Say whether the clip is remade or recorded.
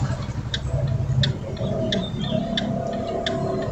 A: recorded